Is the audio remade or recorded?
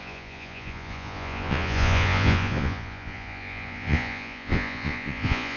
remade